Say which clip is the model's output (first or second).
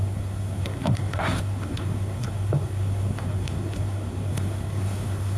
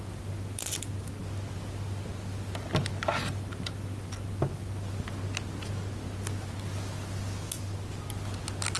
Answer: first